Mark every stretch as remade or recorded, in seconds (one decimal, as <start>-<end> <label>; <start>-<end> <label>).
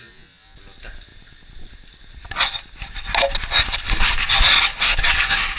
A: 0.0-5.6 recorded